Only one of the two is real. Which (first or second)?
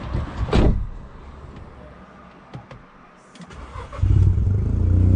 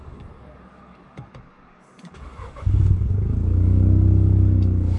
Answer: first